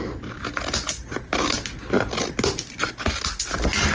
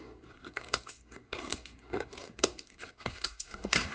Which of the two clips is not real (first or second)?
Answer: second